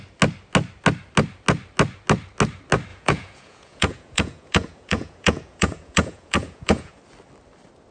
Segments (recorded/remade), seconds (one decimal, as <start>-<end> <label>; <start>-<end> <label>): 0.0-2.9 recorded; 2.9-7.0 remade; 7.0-7.9 recorded